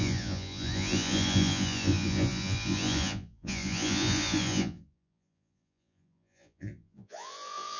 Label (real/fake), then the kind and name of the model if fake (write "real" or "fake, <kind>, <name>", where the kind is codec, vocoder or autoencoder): fake, vocoder, Vocos